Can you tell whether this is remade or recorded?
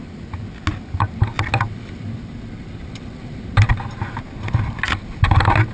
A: recorded